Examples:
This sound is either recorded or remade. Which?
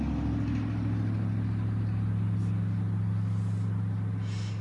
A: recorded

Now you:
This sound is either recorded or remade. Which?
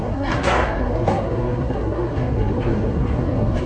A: remade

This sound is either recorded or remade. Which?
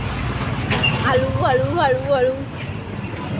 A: recorded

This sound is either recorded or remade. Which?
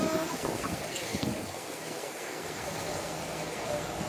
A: remade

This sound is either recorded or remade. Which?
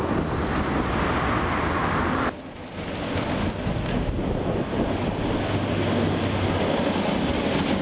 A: recorded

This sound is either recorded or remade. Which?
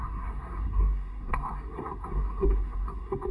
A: remade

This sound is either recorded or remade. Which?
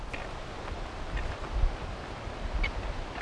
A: recorded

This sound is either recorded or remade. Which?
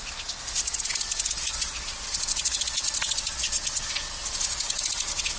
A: recorded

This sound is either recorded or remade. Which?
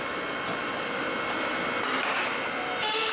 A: recorded